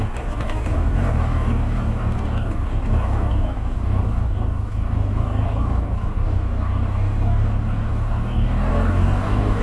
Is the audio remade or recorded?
remade